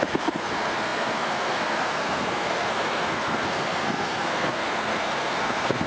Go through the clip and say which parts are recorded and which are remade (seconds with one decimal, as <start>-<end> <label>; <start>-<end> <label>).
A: 0.0-5.9 remade